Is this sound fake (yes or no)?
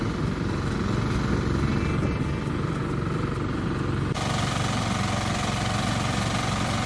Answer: no